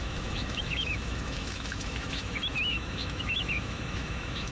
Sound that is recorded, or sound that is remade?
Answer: remade